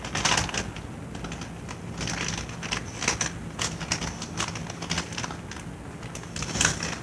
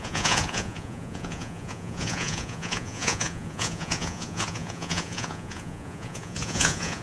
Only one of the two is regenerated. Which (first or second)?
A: second